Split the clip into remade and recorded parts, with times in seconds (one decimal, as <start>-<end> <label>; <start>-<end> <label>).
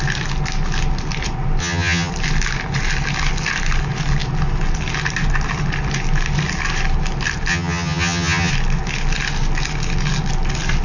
0.0-1.6 recorded; 1.6-2.1 remade; 2.1-7.5 recorded; 7.5-8.5 remade; 8.5-10.8 recorded